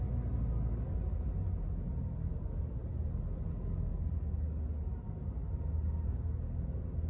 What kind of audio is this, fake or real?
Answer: real